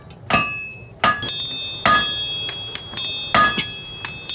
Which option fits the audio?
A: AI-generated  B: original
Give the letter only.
B